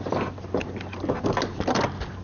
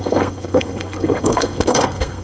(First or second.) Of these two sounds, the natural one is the first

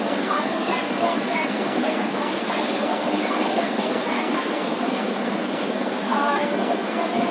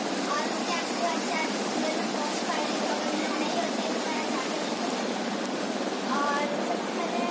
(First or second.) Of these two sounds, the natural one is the second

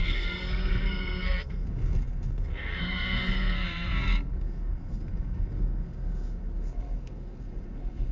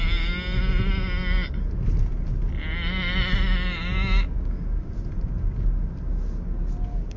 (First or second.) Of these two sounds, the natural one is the second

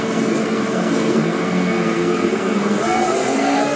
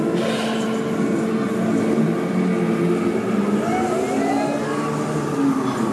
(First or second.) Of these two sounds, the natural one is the second